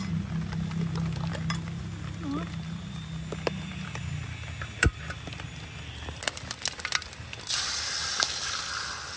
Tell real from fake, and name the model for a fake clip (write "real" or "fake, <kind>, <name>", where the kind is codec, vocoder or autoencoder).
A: real